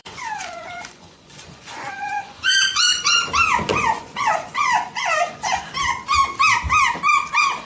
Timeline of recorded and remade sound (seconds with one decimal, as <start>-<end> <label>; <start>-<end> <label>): 0.0-3.3 remade; 3.3-3.7 recorded; 3.7-5.6 remade; 5.6-7.7 recorded